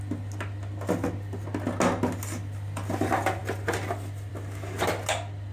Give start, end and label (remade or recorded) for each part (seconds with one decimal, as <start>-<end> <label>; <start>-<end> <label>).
0.0-5.5 recorded